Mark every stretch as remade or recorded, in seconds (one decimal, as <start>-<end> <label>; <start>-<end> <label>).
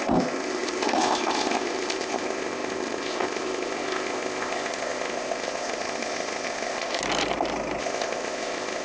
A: 0.0-7.0 remade; 7.0-7.8 recorded; 7.8-8.8 remade